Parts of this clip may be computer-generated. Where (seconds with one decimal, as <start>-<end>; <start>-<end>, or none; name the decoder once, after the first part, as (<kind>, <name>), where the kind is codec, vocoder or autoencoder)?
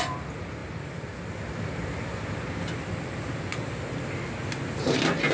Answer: none